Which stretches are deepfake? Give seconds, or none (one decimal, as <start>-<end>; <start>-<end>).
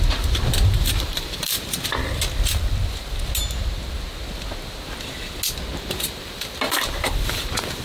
0.0-1.9; 5.7-7.8